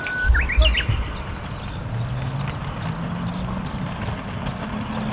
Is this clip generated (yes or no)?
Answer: no